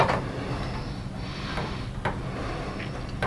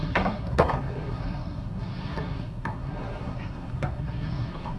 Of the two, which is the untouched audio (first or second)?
first